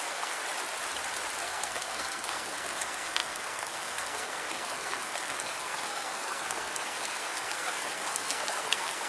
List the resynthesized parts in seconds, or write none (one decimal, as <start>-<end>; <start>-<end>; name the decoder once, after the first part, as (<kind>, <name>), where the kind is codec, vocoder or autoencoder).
0.0-0.4 (codec, SNAC); 1.4-9.1